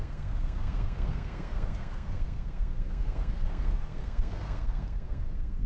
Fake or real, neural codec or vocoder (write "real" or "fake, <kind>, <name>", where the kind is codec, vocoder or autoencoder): fake, codec, SNAC